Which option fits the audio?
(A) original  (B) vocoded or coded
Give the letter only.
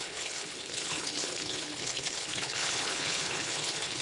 B